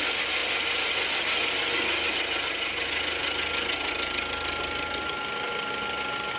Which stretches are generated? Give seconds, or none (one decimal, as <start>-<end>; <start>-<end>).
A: none

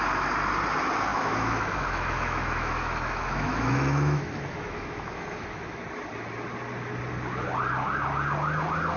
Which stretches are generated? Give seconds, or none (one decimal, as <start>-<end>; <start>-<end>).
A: 1.1-5.8